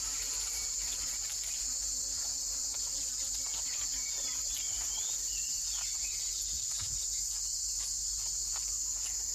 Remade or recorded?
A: recorded